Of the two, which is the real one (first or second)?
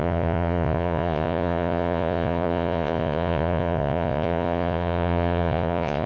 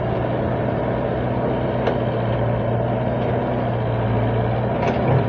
second